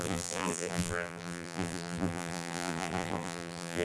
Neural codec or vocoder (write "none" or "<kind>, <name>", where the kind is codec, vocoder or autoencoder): vocoder, BigVGAN v2